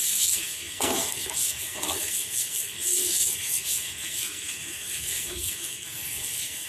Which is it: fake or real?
fake